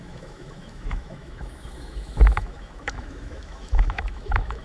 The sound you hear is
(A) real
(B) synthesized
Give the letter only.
B